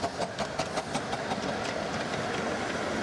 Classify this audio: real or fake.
real